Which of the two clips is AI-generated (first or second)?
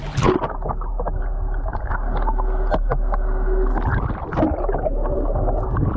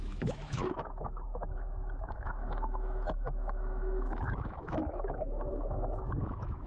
second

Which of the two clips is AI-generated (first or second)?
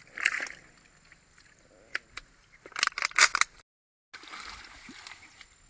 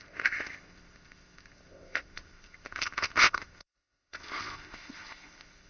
second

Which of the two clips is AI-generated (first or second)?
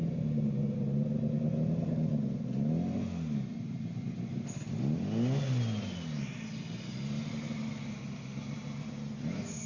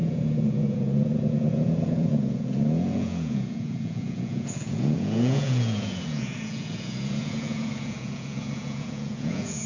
second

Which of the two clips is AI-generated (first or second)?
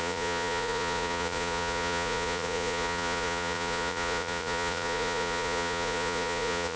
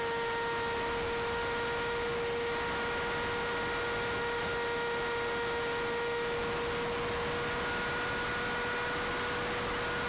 first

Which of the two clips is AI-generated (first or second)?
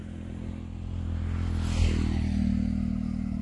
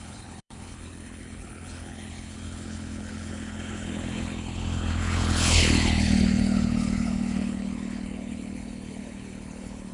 second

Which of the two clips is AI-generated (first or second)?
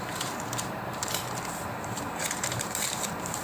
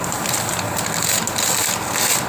first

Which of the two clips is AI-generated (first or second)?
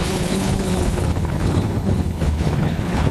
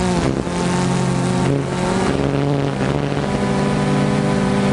first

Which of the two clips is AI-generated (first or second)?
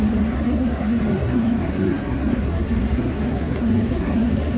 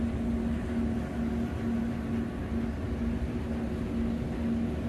first